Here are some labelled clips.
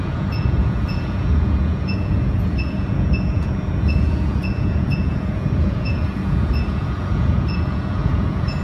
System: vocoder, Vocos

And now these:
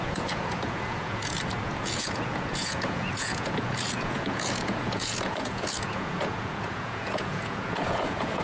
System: vocoder, Vocos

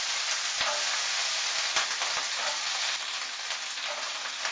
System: none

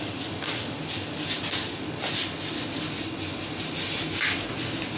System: none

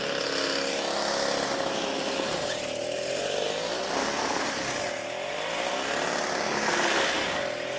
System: none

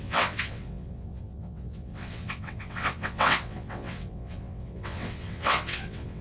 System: vocoder, WaveNeXt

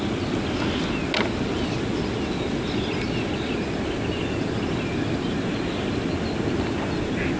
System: none